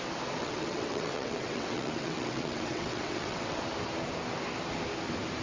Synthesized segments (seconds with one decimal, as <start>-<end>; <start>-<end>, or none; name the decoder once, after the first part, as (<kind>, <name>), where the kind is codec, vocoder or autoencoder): 0.4-3.6 (vocoder, WaveNeXt)

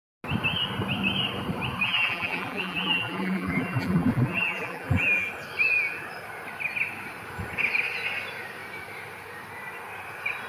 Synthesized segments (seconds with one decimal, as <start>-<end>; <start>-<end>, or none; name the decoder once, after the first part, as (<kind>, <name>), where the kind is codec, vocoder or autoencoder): 1.8-5.3 (vocoder, BigVGAN v2)